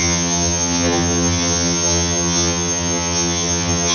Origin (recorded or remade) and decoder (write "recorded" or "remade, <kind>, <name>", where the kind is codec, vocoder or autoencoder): remade, vocoder, HiFi-GAN